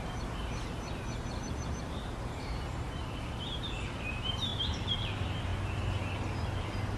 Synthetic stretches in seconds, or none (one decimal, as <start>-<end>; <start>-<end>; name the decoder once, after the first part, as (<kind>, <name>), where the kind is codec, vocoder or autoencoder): 0.0-5.5 (vocoder, BigVGAN v2); 6.6-7.0